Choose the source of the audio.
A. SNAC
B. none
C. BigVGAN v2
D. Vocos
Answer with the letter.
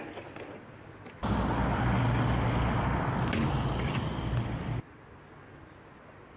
B